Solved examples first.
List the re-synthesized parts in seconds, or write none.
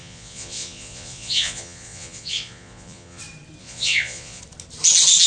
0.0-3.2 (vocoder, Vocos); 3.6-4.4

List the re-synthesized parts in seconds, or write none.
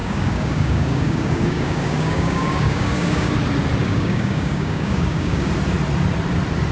0.0-3.3 (codec, DAC); 3.8-5.5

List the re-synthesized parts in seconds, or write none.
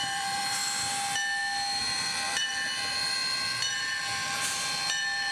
0.0-0.6 (vocoder, BigVGAN v2); 1.8-5.3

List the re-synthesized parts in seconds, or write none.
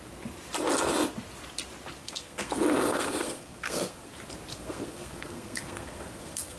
2.0-2.5 (codec, SNAC); 2.9-4.1; 4.5-6.6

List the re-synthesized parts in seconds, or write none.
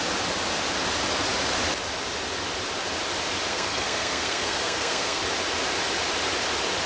3.5-5.2 (codec, SNAC)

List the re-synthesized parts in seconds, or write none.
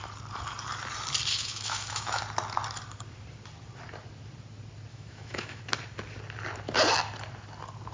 1.3-2.2 (autoencoder, DAC-VAE); 4.9-5.6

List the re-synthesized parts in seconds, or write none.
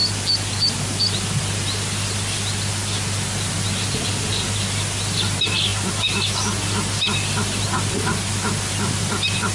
none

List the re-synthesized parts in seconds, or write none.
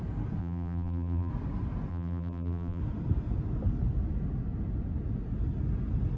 0.4-1.3 (vocoder, BigVGAN v2); 1.9-2.8